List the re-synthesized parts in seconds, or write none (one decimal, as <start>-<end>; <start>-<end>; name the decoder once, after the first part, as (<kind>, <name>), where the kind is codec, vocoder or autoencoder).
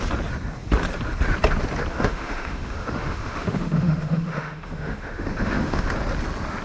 1.9-5.9 (autoencoder, DAC-VAE)